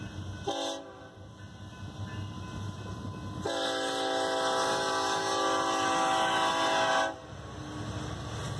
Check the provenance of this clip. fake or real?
real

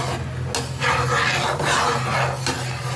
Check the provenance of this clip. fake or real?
real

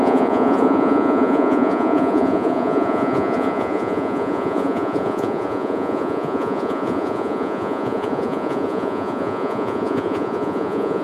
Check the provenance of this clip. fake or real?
fake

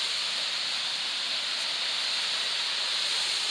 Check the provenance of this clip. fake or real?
real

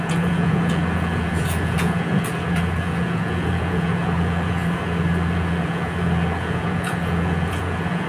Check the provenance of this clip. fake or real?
fake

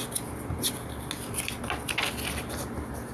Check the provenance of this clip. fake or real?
real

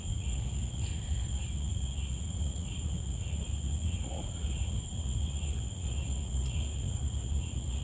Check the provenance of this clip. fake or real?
fake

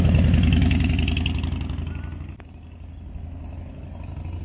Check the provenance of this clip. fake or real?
real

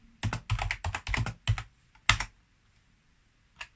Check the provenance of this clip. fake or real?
real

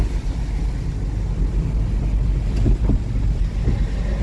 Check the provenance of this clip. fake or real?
real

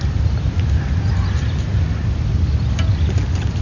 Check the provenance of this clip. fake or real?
real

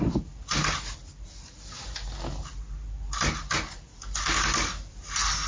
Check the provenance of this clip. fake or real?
real